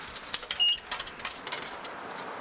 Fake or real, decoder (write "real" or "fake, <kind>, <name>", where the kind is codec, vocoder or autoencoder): real